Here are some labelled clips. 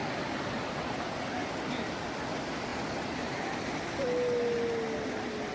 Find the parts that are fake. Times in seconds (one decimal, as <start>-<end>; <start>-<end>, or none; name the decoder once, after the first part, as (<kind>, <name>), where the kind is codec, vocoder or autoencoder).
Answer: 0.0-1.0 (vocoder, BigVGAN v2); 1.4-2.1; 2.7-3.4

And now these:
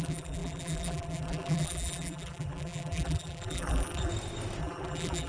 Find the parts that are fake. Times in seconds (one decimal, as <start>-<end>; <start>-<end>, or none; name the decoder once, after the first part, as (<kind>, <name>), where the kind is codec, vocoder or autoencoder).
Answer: 0.0-4.1 (vocoder, BigVGAN v2); 4.6-5.3

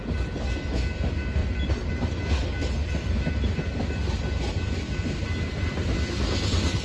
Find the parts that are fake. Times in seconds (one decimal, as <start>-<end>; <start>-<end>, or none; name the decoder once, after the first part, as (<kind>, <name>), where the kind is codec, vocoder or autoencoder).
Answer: 1.4-2.1 (vocoder, BigVGAN v2); 2.8-3.5